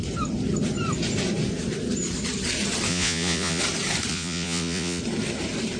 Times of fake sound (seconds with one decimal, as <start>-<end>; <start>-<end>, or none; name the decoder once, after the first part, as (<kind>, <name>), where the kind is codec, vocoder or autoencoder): 2.9-3.6 (vocoder, Vocos); 4.1-5.0